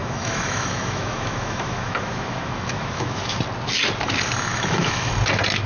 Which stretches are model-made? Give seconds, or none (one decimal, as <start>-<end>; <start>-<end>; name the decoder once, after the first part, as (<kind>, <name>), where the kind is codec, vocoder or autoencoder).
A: 0.0-3.4 (autoencoder, DAC-VAE); 4.5-5.1